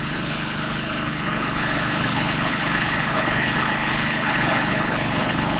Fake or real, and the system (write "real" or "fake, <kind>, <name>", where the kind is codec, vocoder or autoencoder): fake, codec, HILCodec